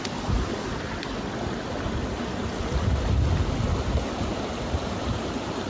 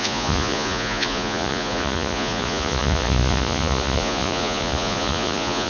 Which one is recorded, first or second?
first